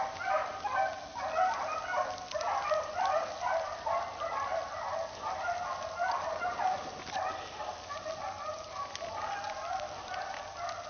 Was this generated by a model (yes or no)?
no